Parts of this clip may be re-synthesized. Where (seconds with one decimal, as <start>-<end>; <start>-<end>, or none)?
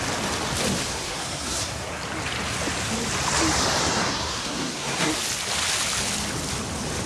0.9-2.0; 3.8-5.1